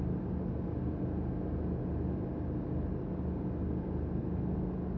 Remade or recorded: recorded